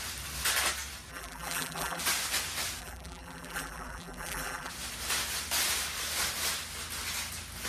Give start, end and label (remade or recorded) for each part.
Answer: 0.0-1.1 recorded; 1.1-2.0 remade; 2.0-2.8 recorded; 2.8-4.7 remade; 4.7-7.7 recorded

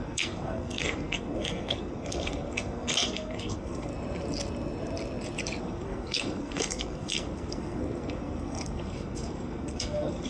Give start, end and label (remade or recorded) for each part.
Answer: 0.0-3.9 remade; 3.9-5.6 recorded; 5.6-10.3 remade

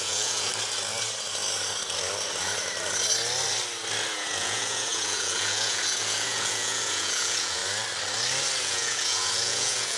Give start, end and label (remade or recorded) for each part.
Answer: 0.0-0.5 remade; 0.5-4.1 recorded; 4.1-7.6 remade; 7.6-8.6 recorded; 8.6-10.0 remade

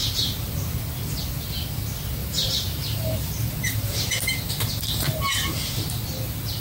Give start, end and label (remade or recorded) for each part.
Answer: 0.0-0.8 remade; 0.8-2.2 recorded; 2.2-6.0 remade; 6.0-6.6 recorded

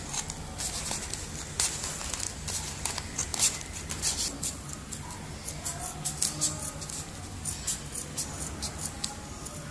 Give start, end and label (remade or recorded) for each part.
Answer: 0.0-9.7 recorded

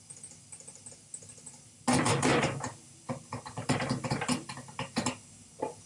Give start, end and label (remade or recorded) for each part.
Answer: 0.0-5.9 recorded